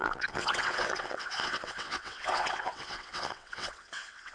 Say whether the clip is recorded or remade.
remade